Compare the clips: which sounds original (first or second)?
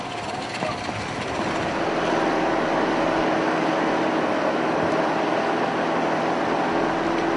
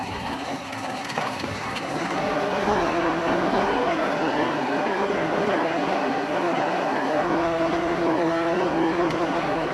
first